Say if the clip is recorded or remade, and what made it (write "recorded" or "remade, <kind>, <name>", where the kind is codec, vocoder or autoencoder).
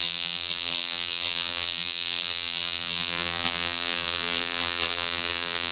remade, vocoder, BigVGAN v2